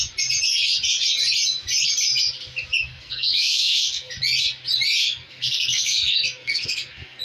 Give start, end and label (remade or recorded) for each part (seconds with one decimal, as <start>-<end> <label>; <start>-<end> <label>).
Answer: 0.0-2.8 recorded; 2.8-4.1 remade; 4.1-5.0 recorded; 5.0-7.2 remade